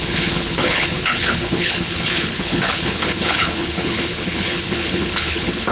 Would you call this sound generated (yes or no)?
yes